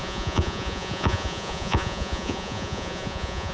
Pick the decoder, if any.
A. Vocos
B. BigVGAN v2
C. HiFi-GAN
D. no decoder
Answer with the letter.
A